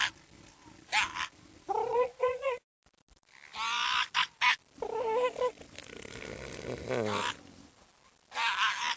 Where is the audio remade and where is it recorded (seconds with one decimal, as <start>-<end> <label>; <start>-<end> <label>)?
0.0-1.9 recorded; 1.9-2.7 remade; 2.7-9.0 recorded